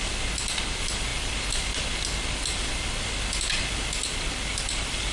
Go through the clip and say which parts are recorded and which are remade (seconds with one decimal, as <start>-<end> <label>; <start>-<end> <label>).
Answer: 0.0-5.1 recorded